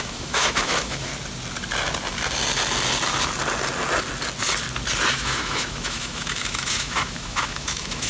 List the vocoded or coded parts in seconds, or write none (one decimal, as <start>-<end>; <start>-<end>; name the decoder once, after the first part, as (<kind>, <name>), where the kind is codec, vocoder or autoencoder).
0.0-1.1 (autoencoder, DAC-VAE); 5.1-8.1